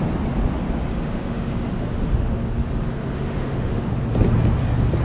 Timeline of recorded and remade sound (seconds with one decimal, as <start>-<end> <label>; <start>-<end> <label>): 0.0-0.9 recorded; 0.9-3.9 remade; 3.9-5.0 recorded